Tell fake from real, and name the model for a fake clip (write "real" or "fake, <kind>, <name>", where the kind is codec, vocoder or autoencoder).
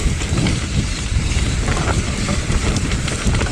fake, vocoder, BigVGAN v2